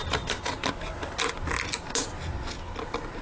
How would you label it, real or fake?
real